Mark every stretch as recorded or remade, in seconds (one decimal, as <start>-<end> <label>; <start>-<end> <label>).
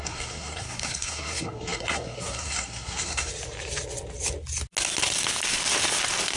0.0-3.3 remade; 3.3-6.4 recorded